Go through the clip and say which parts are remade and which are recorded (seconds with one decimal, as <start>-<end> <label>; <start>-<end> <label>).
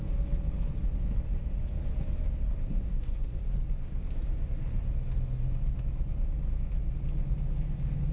0.0-2.7 recorded; 2.7-3.4 remade; 3.4-8.1 recorded